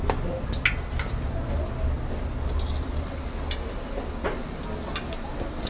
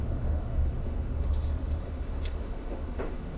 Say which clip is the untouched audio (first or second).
first